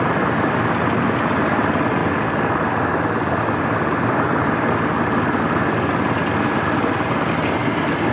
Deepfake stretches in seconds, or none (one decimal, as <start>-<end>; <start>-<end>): none